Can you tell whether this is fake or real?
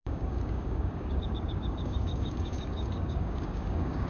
fake